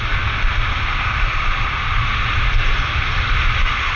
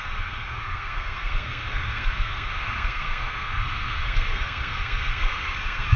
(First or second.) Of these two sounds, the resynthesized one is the second